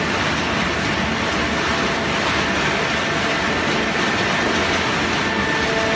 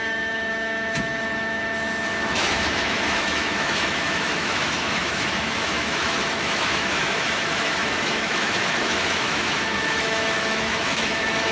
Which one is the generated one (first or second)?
second